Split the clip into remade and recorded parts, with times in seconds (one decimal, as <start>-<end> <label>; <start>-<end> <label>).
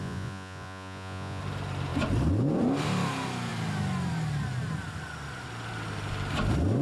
0.0-1.4 remade; 1.4-6.8 recorded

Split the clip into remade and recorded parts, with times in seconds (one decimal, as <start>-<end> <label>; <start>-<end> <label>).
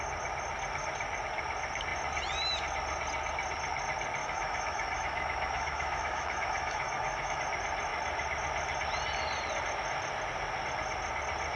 0.0-4.2 recorded; 4.2-7.4 remade; 7.4-11.6 recorded